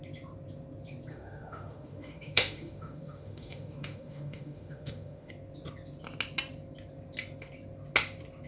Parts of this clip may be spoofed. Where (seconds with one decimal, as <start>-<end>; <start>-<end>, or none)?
1.1-5.3